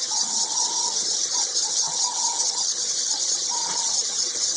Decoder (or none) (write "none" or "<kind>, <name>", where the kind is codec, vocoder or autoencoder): vocoder, HiFi-GAN